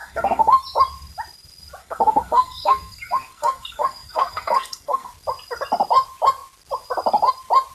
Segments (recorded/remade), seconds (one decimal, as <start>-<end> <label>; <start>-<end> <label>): 0.0-0.6 remade; 0.6-1.8 recorded; 1.8-5.1 remade; 5.1-7.7 recorded